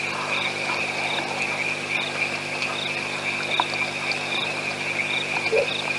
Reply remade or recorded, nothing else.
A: recorded